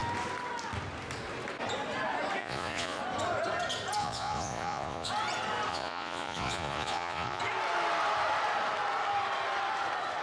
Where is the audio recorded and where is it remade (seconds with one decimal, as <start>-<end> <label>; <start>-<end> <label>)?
0.0-2.4 recorded; 2.4-3.0 remade; 3.0-4.0 recorded; 4.0-5.1 remade; 5.1-5.7 recorded; 5.7-7.4 remade; 7.4-10.2 recorded